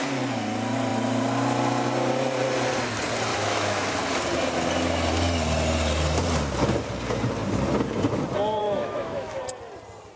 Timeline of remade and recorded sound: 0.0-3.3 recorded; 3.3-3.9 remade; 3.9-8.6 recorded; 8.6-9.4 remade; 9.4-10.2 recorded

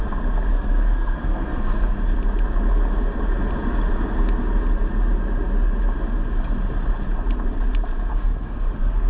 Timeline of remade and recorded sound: 0.0-0.5 recorded; 0.5-2.0 remade; 2.0-8.1 recorded; 8.1-9.1 remade